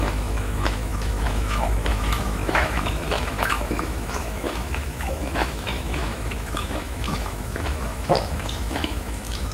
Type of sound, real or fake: fake